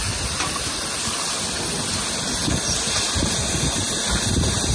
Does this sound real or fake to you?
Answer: real